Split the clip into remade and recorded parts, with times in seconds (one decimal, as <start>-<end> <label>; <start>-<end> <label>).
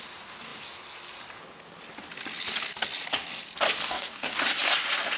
0.0-3.8 recorded; 3.8-4.4 remade; 4.4-5.2 recorded